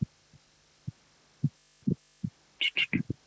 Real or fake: real